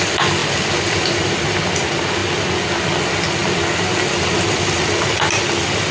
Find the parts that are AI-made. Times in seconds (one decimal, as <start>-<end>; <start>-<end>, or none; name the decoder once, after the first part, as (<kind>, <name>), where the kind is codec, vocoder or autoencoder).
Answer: none